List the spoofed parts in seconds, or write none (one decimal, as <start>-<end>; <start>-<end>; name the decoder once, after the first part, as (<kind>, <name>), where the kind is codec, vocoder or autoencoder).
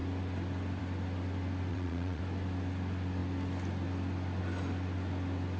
1.7-2.2 (vocoder, Vocos)